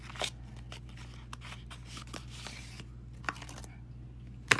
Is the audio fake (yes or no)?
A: no